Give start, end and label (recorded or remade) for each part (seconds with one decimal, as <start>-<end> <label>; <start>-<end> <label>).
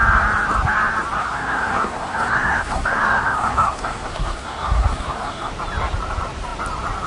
0.0-1.2 recorded; 1.2-5.5 remade; 5.5-7.1 recorded